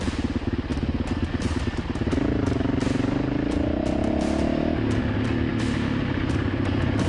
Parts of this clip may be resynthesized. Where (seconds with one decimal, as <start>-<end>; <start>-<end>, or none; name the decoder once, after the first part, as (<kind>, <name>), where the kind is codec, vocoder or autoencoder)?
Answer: none